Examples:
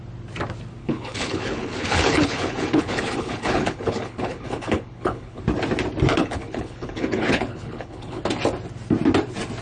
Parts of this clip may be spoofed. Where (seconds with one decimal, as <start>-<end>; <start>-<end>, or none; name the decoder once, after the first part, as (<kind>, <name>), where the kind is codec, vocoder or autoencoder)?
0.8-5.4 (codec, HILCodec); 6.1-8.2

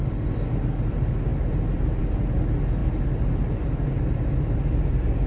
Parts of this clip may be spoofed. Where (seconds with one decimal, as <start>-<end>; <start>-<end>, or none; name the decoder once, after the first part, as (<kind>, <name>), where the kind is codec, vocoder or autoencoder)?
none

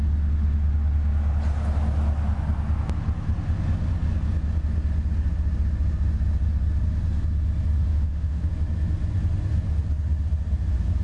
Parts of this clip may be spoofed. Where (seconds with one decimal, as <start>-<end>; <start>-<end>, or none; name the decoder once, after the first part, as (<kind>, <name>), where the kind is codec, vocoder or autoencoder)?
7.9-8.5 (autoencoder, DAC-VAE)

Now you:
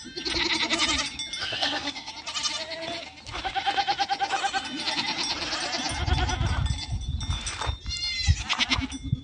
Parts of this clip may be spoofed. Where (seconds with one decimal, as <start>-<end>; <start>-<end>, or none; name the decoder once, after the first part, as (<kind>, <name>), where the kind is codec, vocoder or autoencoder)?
1.4-2.1 (codec, SNAC)

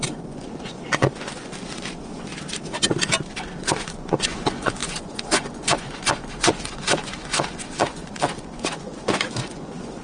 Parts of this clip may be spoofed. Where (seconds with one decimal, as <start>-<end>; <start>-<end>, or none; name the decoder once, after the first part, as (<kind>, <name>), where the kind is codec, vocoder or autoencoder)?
0.0-2.3 (vocoder, Vocos); 3.6-10.0

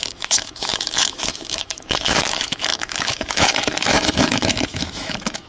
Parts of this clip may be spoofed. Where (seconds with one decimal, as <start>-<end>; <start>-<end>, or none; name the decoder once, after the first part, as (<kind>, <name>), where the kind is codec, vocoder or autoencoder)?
0.0-5.5 (autoencoder, DAC-VAE)

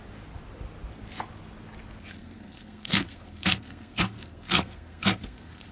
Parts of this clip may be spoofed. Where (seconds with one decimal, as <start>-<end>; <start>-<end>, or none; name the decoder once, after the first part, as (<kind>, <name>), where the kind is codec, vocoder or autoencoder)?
2.2-5.7 (codec, SNAC)

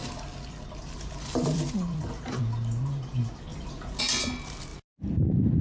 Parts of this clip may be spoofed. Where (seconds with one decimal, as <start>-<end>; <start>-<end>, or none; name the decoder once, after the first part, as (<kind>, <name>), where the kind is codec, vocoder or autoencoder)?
0.0-2.4 (vocoder, BigVGAN v2)